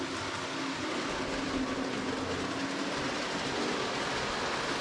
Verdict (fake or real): real